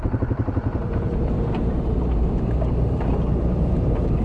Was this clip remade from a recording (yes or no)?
yes